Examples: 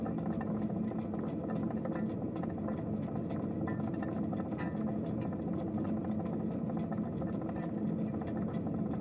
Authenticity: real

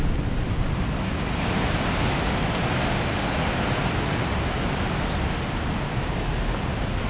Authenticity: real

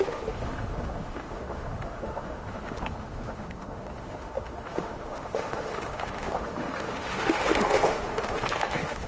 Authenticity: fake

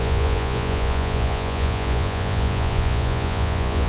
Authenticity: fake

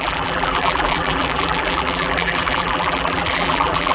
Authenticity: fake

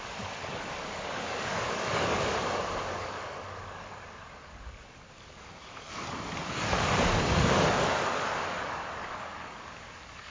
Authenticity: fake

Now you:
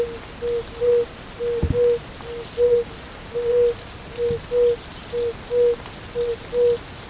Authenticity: real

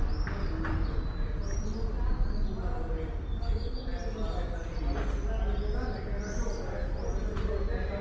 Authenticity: real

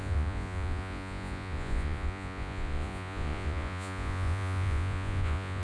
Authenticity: fake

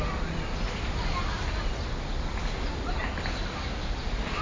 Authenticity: real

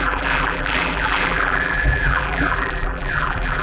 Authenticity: fake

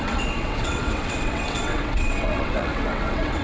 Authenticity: fake